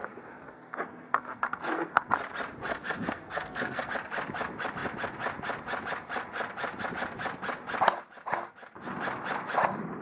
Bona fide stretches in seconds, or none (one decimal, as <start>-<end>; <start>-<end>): 2.1-2.7; 3.9-10.0